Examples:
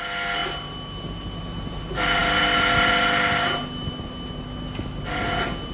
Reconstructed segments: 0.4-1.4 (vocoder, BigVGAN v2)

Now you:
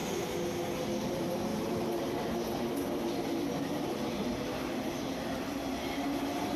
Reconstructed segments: 1.1-5.7 (vocoder, BigVGAN v2)

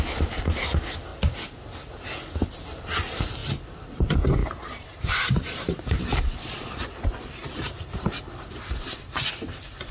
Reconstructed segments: 1.1-1.9 (vocoder, BigVGAN v2); 4.4-5.7; 7.4-8.9

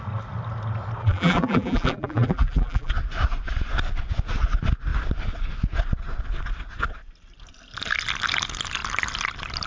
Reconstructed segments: 1.0-2.9 (vocoder, BigVGAN v2)